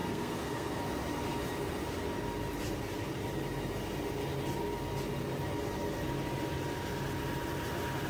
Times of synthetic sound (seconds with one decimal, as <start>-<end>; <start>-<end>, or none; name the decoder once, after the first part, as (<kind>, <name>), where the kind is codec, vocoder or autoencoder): 0.0-0.8 (codec, SNAC)